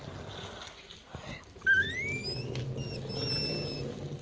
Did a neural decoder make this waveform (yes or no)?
no